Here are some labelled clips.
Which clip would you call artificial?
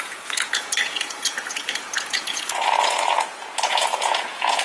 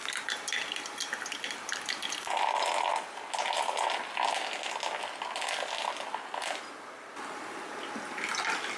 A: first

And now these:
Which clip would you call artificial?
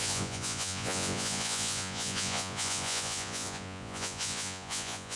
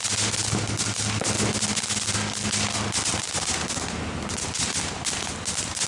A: first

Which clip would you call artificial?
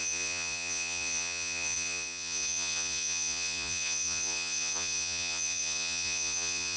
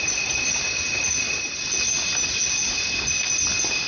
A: first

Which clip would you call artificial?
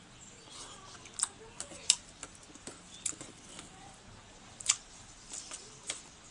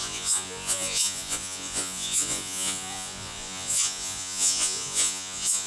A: second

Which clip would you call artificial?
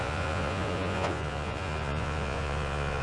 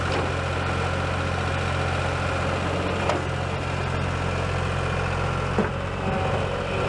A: first